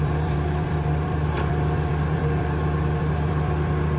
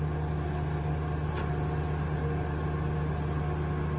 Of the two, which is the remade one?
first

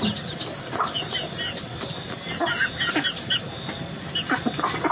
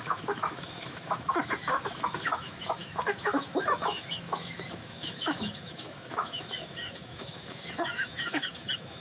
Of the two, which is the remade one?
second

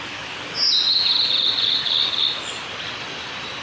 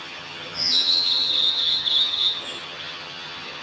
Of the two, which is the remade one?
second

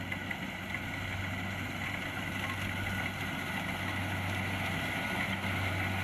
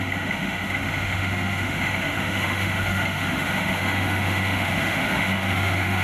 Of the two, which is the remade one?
second